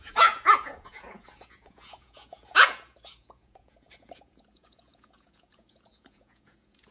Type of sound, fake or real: fake